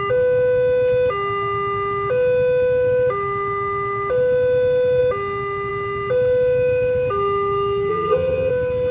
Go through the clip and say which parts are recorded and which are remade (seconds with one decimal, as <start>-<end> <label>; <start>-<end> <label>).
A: 0.0-7.9 recorded; 7.9-8.5 remade; 8.5-8.9 recorded